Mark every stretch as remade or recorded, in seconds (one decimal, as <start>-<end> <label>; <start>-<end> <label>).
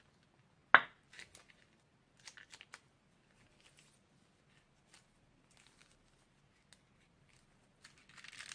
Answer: 0.0-8.5 recorded